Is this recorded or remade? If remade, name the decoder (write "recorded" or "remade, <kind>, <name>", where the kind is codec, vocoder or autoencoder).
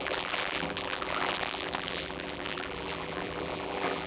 remade, vocoder, BigVGAN v2